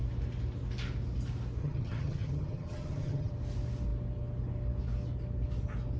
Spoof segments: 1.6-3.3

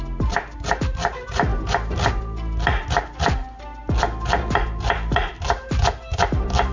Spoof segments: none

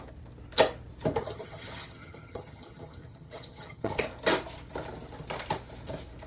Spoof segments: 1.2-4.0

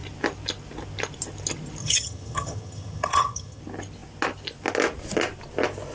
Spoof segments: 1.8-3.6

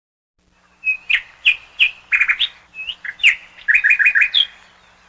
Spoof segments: none

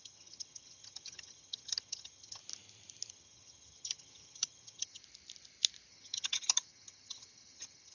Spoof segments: 0.0-2.4; 3.1-5.0; 5.9-7.9

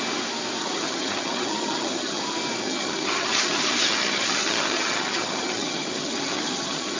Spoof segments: 0.6-2.2; 2.6-7.0